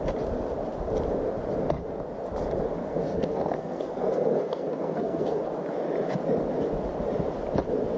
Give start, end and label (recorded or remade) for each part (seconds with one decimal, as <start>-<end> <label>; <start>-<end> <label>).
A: 0.0-2.8 recorded; 2.8-5.4 remade; 5.4-8.0 recorded

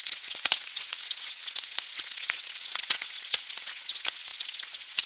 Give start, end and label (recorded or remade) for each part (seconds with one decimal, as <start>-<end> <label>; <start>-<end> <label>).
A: 0.0-5.1 remade